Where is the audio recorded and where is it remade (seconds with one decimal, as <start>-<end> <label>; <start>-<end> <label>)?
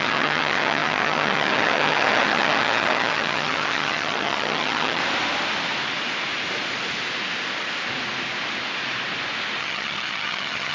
0.0-5.0 remade; 5.0-9.6 recorded; 9.6-10.7 remade